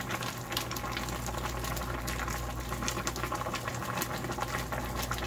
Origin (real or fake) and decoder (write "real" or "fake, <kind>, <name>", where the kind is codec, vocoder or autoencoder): real